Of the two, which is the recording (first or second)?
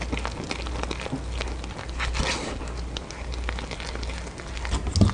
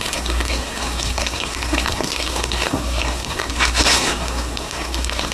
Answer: first